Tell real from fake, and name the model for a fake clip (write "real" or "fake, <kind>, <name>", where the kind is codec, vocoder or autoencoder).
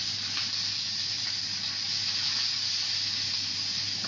real